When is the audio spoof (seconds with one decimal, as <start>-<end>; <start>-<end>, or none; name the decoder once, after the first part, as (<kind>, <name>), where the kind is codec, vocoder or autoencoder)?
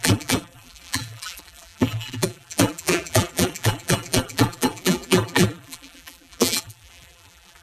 0.0-7.6 (vocoder, BigVGAN v2)